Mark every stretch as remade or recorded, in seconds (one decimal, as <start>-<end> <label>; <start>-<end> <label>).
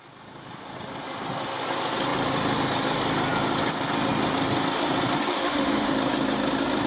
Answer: 0.0-5.3 recorded; 5.3-5.9 remade; 5.9-6.9 recorded